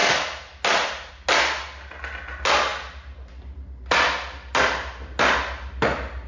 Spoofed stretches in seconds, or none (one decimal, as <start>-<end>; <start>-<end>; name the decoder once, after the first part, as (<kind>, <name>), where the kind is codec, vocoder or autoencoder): none